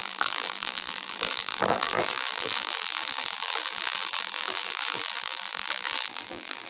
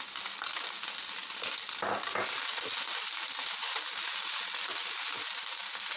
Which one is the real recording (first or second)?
second